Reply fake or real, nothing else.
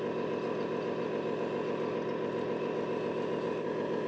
real